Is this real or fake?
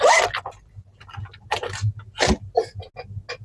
real